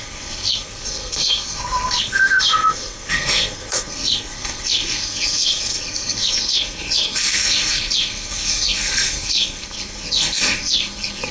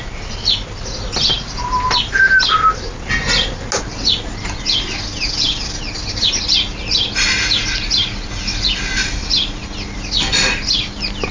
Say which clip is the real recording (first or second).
second